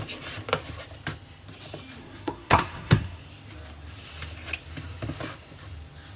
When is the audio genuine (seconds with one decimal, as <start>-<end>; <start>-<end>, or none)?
0.0-2.0; 3.2-6.2